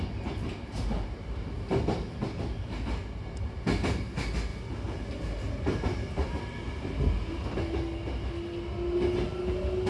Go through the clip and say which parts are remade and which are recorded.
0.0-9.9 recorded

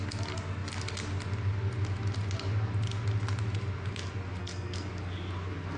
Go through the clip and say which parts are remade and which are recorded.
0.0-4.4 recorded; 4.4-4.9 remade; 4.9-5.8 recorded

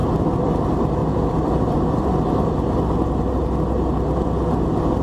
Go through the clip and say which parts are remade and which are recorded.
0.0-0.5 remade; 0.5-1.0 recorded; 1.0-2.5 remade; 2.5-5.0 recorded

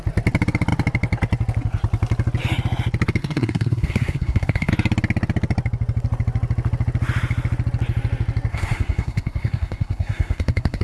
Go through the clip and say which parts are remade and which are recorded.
0.0-3.2 recorded; 3.2-4.7 remade; 4.7-8.5 recorded; 8.5-10.8 remade